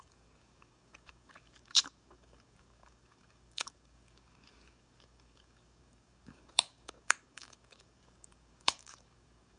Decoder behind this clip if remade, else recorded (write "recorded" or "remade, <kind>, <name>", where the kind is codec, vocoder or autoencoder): remade, codec, DAC